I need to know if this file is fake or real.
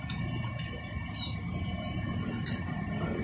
fake